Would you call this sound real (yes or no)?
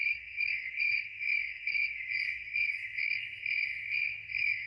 no